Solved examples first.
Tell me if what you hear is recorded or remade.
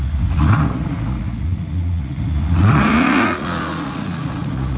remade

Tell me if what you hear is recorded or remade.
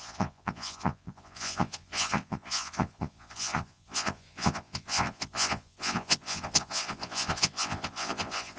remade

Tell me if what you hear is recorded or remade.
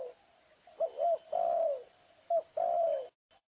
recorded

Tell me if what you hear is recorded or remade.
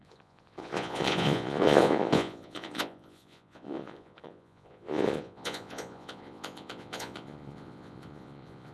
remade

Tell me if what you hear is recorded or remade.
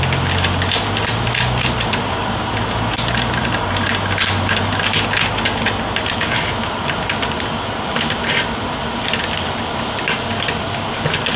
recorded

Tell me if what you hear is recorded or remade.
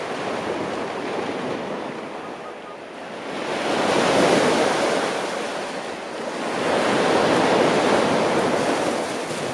recorded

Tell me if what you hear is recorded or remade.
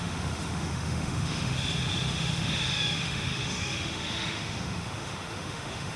remade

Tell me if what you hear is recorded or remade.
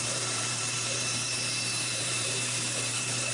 remade